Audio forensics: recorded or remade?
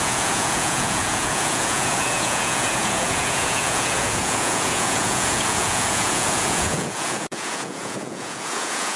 remade